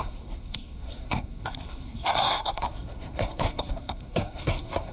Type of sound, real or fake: fake